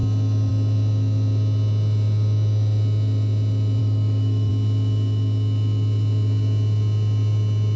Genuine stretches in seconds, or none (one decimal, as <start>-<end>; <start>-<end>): 0.0-3.8; 4.5-7.8